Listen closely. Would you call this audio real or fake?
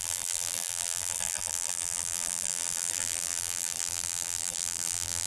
fake